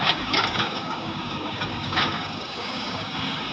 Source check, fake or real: fake